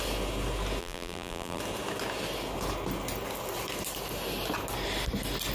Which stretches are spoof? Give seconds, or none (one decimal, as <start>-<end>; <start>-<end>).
0.8-1.6